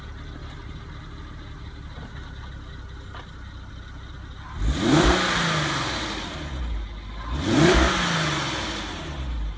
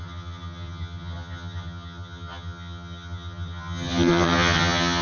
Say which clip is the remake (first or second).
second